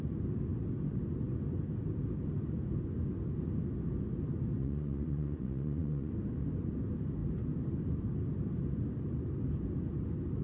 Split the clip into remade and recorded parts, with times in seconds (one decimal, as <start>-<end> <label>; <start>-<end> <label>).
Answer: 0.0-4.6 recorded; 4.6-6.1 remade; 6.1-10.4 recorded